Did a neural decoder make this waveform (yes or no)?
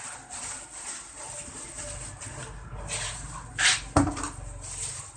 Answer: no